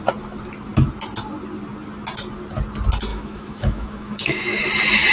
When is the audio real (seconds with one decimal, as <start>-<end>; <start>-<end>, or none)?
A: 0.0-3.1; 4.6-5.1